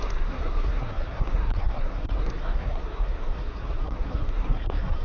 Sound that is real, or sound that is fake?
fake